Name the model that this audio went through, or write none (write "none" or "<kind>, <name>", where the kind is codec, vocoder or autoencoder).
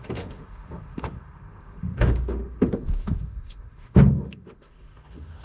autoencoder, DAC-VAE